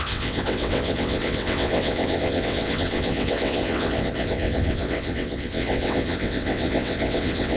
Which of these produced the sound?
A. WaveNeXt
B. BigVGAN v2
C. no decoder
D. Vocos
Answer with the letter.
A